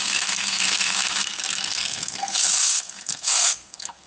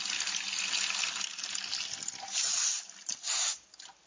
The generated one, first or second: first